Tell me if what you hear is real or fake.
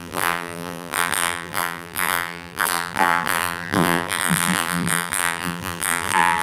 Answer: fake